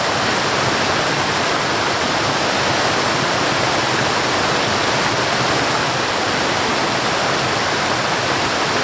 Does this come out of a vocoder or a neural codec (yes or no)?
no